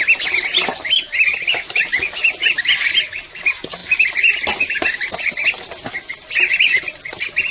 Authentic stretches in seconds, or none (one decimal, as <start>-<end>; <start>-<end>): 0.0-7.5